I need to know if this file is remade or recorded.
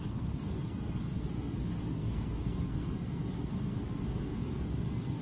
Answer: remade